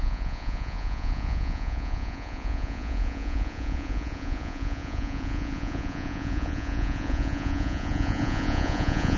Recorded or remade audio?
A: remade